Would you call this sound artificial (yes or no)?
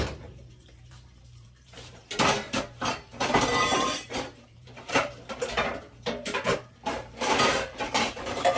yes